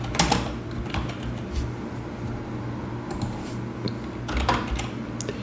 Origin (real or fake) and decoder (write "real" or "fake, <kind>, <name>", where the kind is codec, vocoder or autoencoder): real